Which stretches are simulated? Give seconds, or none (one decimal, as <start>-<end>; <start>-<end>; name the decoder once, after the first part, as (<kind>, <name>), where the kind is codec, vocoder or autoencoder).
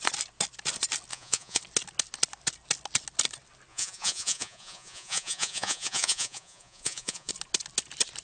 1.1-1.6 (vocoder, Vocos); 3.7-7.3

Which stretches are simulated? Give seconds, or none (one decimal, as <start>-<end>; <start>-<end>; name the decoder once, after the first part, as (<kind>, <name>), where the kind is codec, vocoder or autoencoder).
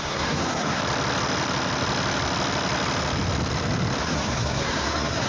0.0-0.8 (codec, SNAC); 4.0-5.3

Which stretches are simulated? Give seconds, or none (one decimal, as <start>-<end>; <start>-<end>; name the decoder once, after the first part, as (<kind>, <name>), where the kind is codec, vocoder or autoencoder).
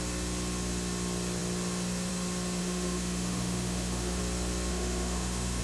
2.6-4.2 (autoencoder, DAC-VAE); 4.7-5.6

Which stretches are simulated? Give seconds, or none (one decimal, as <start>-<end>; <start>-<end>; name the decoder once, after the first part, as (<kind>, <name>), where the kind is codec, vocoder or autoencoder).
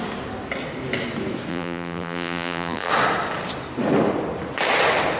1.5-2.9 (vocoder, BigVGAN v2)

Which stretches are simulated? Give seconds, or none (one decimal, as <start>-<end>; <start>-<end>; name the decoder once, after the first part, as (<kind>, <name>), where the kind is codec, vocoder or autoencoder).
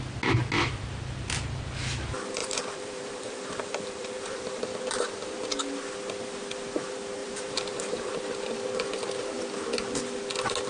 2.4-4.6 (vocoder, BigVGAN v2); 7.2-8.1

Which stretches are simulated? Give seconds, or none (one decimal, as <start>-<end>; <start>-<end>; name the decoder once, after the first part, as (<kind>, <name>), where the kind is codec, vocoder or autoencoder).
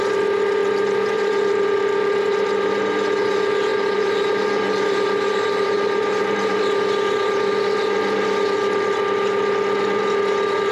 3.7-6.6 (vocoder, BigVGAN v2)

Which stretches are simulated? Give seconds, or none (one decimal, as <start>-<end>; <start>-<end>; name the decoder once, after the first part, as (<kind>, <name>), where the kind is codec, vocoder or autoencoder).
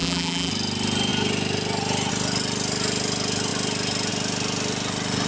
0.0-0.5 (vocoder, BigVGAN v2)